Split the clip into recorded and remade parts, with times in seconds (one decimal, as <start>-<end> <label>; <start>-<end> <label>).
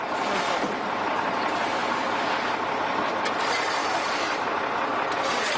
0.0-3.8 recorded; 3.8-4.5 remade; 4.5-5.6 recorded